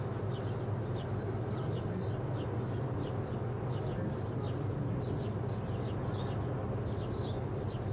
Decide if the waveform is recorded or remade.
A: recorded